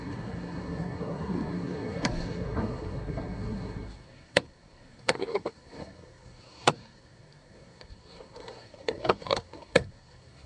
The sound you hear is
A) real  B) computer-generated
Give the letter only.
B